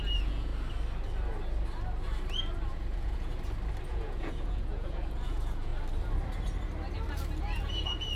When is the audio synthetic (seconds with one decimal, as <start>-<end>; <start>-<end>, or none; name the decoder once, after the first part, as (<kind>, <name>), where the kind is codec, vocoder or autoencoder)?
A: 0.0-0.5 (vocoder, Vocos); 2.7-3.3; 3.9-5.7; 7.4-8.2